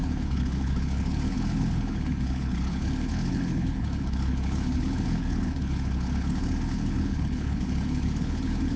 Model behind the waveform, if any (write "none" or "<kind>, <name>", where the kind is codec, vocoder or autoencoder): codec, HILCodec